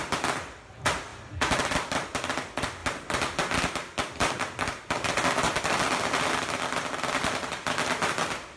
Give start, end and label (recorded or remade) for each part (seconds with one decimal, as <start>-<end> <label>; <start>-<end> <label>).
0.0-8.6 recorded